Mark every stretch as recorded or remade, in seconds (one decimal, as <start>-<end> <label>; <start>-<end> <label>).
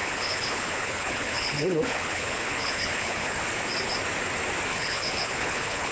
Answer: 0.0-3.4 remade; 3.4-4.7 recorded; 4.7-5.9 remade